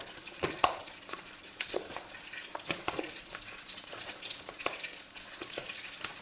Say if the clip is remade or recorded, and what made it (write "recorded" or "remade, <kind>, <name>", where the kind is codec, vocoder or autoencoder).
remade, vocoder, Vocos